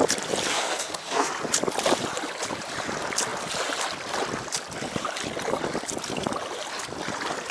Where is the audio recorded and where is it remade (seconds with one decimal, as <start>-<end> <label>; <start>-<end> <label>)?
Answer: 0.0-0.5 recorded; 0.5-1.3 remade; 1.3-7.5 recorded